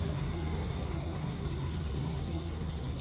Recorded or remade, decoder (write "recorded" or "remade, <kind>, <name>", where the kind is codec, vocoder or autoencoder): remade, codec, SNAC